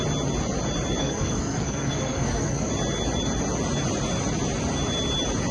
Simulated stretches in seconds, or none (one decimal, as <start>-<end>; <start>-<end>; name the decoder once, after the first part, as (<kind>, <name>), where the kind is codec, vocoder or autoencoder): 1.0-2.7 (codec, SNAC)

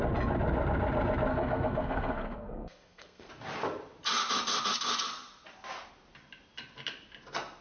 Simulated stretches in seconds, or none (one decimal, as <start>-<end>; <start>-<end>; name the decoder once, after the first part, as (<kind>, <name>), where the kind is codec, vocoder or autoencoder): 1.3-3.3 (codec, SNAC)

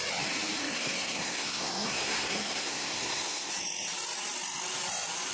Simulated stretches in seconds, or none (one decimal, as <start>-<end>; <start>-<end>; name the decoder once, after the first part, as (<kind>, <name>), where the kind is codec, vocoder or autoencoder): 0.6-3.5 (codec, SNAC)

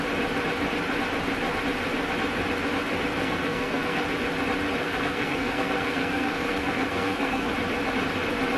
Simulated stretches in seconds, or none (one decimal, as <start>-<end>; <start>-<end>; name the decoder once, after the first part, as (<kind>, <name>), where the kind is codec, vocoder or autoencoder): 3.2-4.0 (codec, SNAC); 4.8-7.5

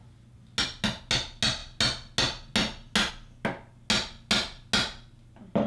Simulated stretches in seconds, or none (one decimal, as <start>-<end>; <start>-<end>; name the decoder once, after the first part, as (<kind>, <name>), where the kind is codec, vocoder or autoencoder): none

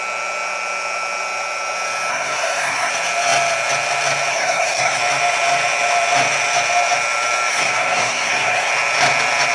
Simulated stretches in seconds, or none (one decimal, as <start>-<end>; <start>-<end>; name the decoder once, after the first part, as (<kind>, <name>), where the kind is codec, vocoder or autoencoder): 2.1-2.9 (codec, SNAC); 4.3-5.0; 7.5-8.7